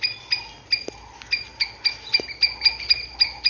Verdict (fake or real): real